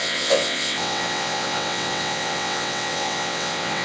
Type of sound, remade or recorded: remade